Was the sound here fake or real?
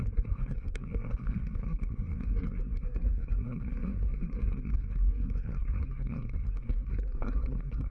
fake